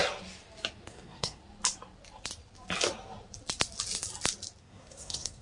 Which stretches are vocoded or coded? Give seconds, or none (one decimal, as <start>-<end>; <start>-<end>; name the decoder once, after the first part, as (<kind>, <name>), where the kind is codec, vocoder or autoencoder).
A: 0.9-1.4 (codec, SNAC); 4.6-5.4